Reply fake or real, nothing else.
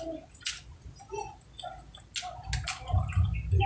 real